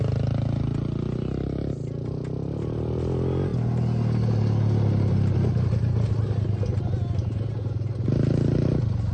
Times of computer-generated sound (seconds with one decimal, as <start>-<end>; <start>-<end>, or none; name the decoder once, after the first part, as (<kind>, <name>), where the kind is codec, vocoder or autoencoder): none